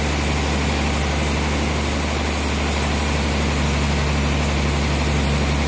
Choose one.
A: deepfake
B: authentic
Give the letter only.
B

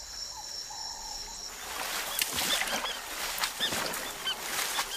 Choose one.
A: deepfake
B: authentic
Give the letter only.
B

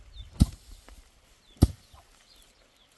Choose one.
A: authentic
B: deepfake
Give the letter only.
A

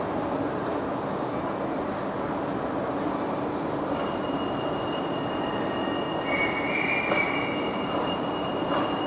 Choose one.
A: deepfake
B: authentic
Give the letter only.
B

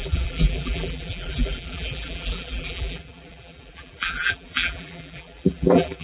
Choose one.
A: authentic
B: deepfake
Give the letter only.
B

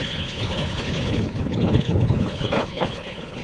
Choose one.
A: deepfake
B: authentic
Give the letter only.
A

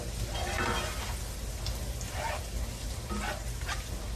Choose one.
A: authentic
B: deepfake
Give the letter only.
A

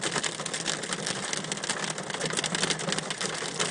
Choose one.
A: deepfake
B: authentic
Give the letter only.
B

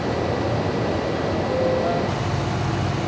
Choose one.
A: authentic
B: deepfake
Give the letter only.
A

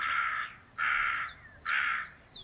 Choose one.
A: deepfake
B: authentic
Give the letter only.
B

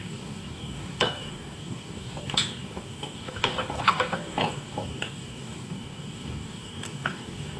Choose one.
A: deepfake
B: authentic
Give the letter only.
A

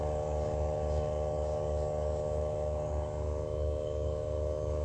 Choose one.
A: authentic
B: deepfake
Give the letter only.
B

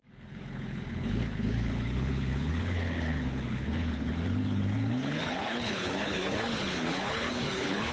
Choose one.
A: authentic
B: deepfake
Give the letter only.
B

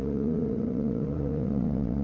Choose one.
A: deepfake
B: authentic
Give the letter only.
A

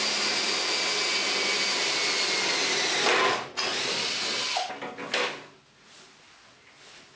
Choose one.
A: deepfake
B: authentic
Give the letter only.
B